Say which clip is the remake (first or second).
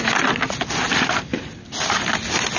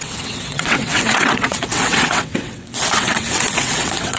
second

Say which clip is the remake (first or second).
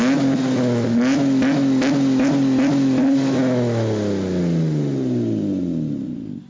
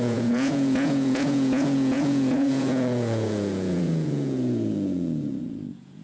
second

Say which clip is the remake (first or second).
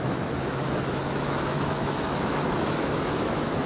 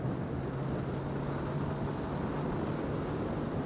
first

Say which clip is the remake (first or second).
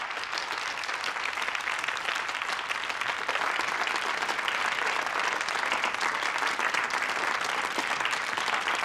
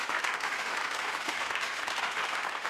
second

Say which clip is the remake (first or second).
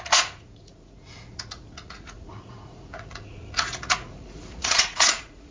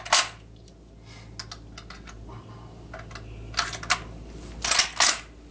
first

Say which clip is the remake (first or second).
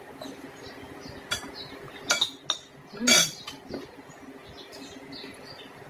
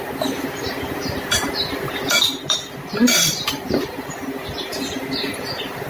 second